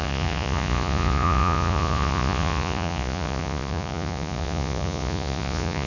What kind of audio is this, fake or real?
fake